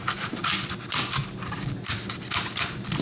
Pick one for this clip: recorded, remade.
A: recorded